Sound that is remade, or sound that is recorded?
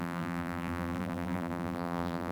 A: remade